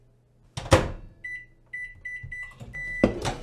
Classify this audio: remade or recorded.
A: recorded